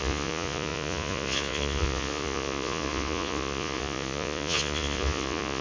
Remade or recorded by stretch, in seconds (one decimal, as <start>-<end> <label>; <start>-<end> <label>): 0.0-5.6 remade